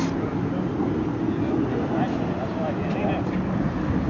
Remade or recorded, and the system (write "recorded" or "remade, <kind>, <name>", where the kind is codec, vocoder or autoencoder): recorded